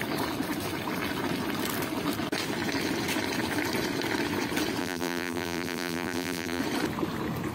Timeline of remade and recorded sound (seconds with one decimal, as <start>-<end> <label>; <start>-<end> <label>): 0.0-4.8 recorded; 4.8-6.6 remade; 6.6-7.5 recorded